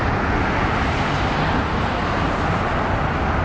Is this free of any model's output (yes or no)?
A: yes